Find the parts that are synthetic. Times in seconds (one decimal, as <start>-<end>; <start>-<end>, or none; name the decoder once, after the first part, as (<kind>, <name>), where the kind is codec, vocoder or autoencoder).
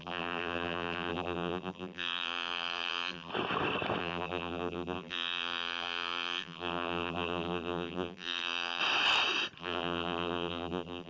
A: 0.0-3.3 (vocoder, BigVGAN v2); 4.0-8.8; 9.6-11.1